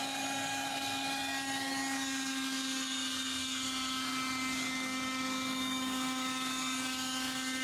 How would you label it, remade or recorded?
remade